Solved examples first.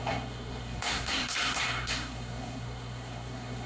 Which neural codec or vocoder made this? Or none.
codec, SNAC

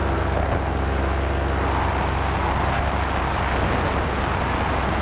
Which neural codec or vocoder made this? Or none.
none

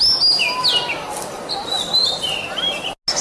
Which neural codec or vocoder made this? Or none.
none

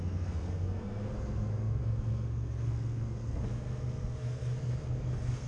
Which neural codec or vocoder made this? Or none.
codec, SNAC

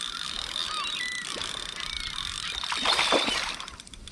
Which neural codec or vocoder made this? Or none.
none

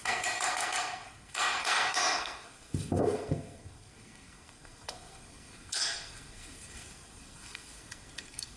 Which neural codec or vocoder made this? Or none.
codec, SNAC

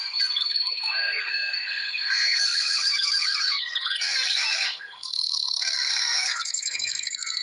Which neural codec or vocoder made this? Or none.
codec, SNAC